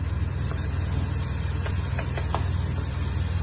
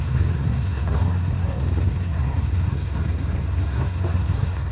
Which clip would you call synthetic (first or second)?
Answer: second